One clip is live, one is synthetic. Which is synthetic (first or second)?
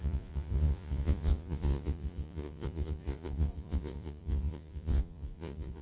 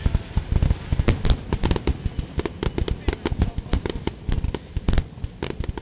first